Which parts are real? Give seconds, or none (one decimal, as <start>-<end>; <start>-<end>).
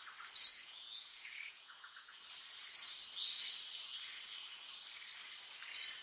0.0-0.5; 2.2-6.0